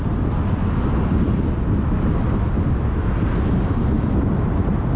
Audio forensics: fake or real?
real